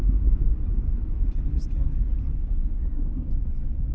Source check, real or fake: real